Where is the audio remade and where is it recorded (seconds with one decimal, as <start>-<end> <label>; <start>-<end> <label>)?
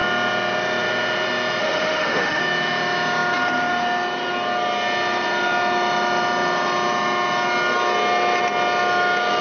0.0-1.6 recorded; 1.6-2.4 remade; 2.4-9.4 recorded